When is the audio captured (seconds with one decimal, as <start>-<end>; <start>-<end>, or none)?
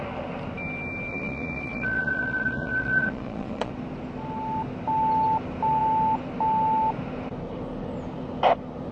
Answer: 0.0-1.1; 3.7-8.9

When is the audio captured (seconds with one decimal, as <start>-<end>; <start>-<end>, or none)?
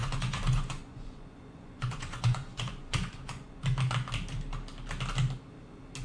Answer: 3.6-6.0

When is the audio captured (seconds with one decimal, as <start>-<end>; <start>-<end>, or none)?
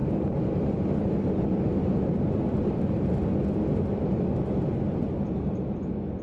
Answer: 0.0-6.2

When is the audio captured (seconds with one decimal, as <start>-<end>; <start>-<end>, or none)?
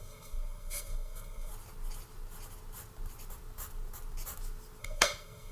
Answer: 1.5-4.8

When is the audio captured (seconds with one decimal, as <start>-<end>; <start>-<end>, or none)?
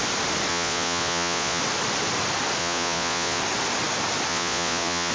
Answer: 0.0-0.5; 1.6-2.6; 3.4-4.3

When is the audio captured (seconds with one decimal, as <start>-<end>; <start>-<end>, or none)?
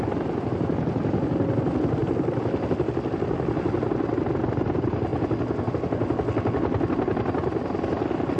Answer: 0.0-8.4